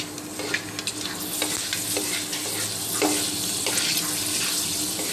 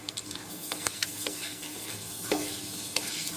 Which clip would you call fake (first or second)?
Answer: second